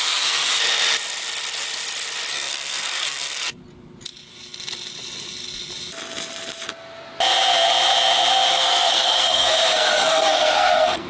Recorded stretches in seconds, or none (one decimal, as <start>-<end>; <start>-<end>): 0.5-2.3; 3.6-8.5